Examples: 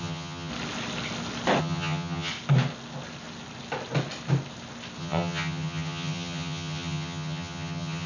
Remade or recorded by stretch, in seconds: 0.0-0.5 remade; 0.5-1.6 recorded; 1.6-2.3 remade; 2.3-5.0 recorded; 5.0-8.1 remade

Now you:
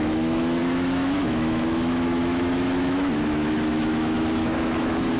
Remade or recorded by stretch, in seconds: 0.0-5.2 remade